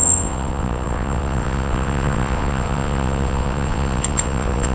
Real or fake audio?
fake